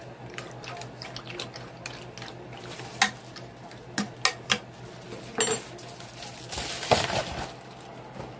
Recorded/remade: recorded